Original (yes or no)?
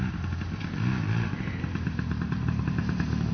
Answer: yes